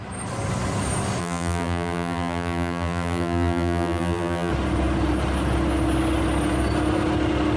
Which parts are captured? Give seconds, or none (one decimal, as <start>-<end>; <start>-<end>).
0.0-1.2; 4.5-7.6